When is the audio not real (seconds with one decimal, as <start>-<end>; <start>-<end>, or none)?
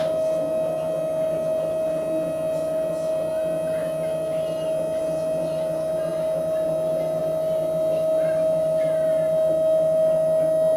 none